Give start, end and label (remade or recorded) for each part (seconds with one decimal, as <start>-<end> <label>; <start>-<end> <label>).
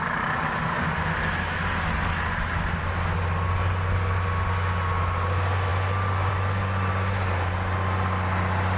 0.0-8.8 recorded